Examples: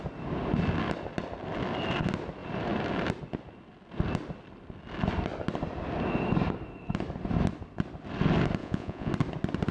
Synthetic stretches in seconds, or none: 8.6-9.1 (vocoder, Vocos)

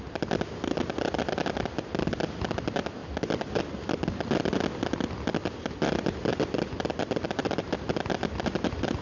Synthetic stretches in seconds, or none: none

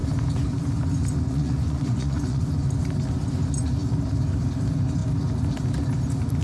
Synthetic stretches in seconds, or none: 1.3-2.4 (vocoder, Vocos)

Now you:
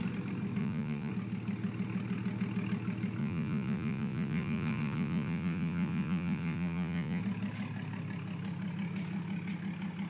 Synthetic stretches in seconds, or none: 0.6-1.1 (vocoder, Vocos); 3.2-7.2